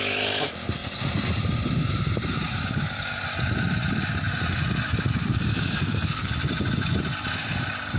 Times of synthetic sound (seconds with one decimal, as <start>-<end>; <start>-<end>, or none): 5.2-6.3